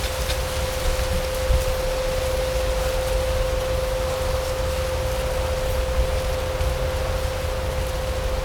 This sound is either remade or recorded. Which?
recorded